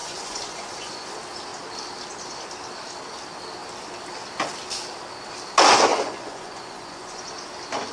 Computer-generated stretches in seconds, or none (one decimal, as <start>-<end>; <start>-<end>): 0.0-1.1; 5.9-7.2